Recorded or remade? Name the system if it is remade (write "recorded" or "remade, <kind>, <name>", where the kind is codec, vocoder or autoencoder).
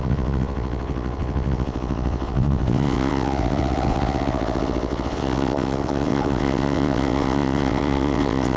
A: remade, vocoder, WaveNeXt